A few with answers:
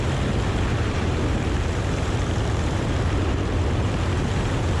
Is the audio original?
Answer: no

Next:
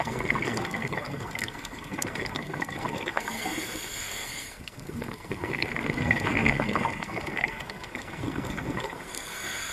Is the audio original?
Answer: no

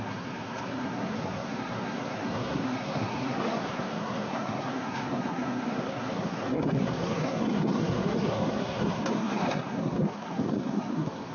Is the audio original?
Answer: no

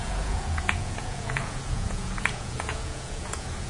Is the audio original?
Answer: no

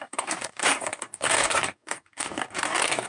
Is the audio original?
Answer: no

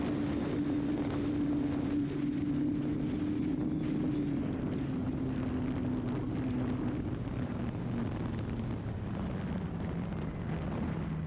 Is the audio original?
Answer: yes